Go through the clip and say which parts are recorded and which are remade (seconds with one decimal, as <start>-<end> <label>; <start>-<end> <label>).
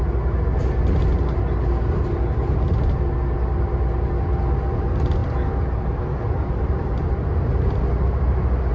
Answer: 0.0-8.7 recorded